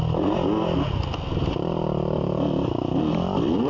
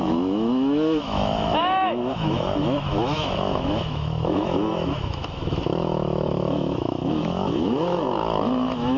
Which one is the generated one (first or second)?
second